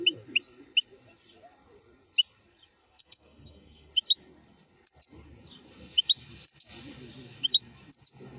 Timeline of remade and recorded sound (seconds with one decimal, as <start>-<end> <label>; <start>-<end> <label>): 0.0-2.8 recorded; 2.8-3.9 remade; 3.9-8.4 recorded

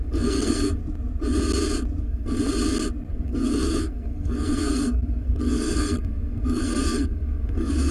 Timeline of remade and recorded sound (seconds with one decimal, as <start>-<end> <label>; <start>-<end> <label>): 0.0-0.8 remade; 0.8-2.0 recorded; 2.0-2.4 remade; 2.4-3.1 recorded; 3.1-7.9 remade

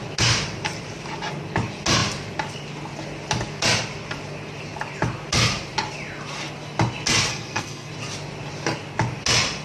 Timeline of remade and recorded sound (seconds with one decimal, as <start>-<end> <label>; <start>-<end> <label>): 0.0-7.3 recorded; 7.3-7.9 remade; 7.9-9.6 recorded